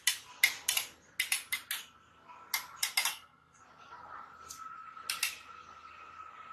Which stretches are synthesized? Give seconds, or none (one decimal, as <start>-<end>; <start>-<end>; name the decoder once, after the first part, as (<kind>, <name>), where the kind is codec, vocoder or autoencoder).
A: 3.1-3.6 (codec, SNAC)